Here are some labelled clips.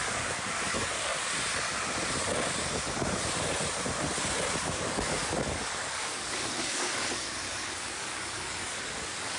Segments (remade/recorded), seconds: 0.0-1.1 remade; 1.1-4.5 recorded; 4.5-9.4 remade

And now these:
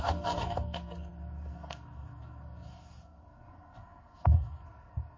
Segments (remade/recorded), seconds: 0.0-5.2 remade